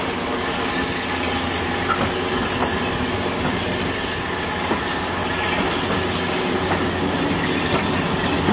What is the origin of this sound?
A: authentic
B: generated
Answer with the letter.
A